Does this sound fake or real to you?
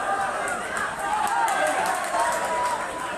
real